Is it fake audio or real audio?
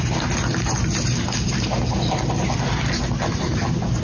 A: real